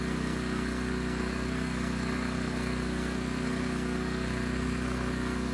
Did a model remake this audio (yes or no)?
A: yes